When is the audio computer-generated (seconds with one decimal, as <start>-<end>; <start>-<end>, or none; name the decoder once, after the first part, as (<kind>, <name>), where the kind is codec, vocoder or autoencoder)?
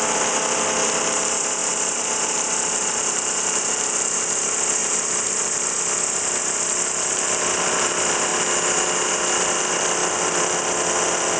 0.0-8.3 (vocoder, BigVGAN v2); 9.4-10.0; 11.0-11.4